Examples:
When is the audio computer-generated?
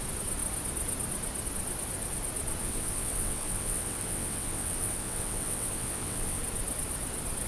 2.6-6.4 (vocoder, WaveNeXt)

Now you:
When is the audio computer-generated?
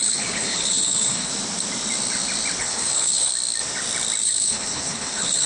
0.0-1.3 (codec, HILCodec); 2.6-3.3; 4.2-5.5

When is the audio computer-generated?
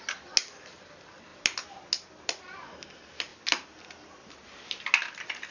none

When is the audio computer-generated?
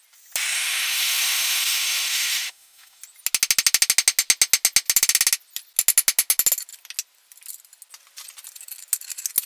0.5-3.0 (autoencoder, DAC-VAE)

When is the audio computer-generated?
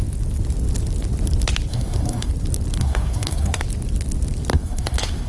1.7-2.3 (codec, SNAC); 2.8-3.6; 4.5-5.3